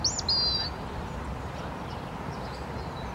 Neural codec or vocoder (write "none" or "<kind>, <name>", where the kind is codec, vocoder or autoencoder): none